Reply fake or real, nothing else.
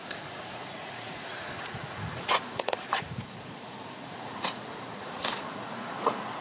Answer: fake